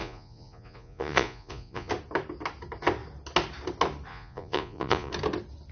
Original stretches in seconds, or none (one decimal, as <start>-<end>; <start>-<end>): 1.9-4.1; 5.1-5.7